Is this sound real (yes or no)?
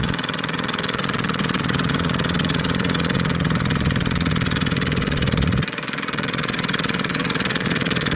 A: no